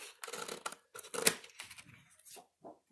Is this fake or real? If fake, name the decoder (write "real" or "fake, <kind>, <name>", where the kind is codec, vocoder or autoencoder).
real